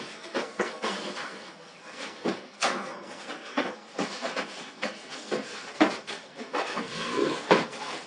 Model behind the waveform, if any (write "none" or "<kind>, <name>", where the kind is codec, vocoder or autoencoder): codec, SNAC